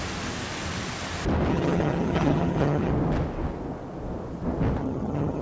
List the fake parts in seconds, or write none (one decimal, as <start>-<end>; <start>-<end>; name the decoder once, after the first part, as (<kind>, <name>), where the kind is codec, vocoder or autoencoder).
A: 1.5-2.9 (vocoder, HiFi-GAN); 4.8-5.4